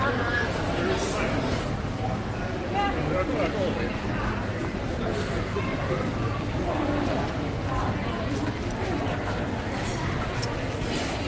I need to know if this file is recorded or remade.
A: recorded